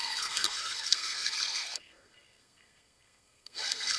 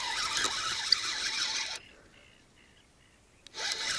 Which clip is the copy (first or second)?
first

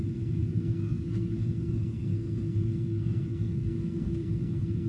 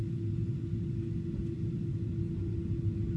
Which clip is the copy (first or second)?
first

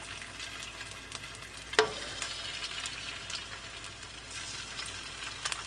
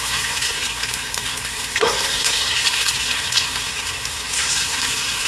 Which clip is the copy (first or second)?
second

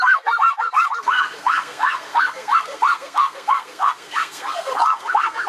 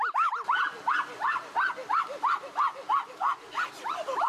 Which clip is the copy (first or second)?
first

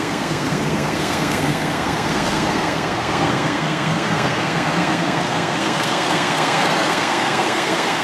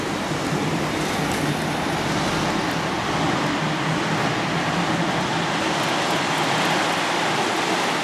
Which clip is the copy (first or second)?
first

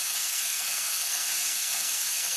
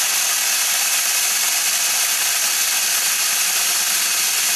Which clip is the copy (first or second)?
first